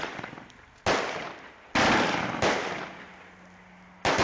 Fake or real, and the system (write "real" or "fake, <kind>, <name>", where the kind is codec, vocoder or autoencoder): real